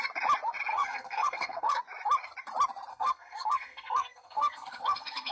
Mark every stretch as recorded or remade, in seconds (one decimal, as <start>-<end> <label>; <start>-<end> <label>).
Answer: 0.0-0.7 recorded; 0.7-1.8 remade; 1.8-2.9 recorded; 2.9-5.3 remade